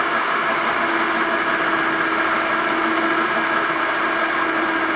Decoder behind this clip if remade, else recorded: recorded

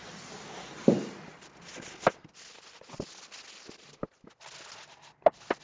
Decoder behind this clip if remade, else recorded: recorded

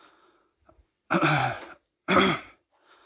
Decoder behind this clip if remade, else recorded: remade, vocoder, BigVGAN v2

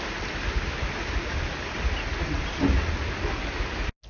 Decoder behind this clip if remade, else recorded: recorded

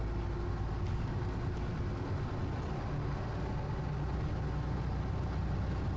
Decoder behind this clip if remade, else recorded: recorded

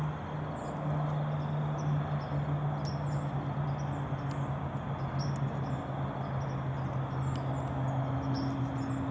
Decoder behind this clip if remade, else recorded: recorded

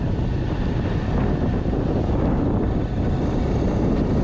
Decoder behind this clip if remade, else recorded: recorded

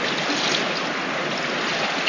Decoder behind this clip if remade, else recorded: recorded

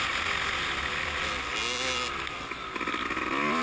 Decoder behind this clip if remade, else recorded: recorded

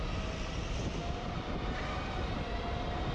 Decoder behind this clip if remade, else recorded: recorded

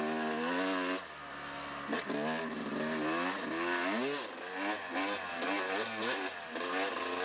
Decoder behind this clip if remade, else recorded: recorded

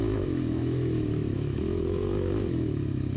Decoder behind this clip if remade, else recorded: remade, autoencoder, DAC-VAE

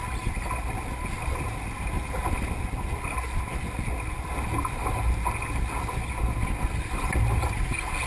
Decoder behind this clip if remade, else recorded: recorded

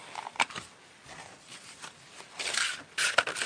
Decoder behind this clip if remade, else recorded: remade, vocoder, BigVGAN v2